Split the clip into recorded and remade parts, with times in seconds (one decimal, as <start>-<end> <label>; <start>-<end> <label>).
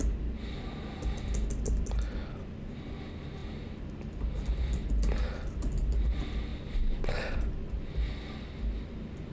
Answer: 0.0-9.3 recorded